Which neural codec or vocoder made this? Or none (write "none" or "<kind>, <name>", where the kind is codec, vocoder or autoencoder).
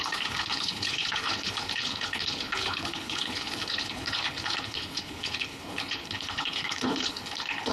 codec, HILCodec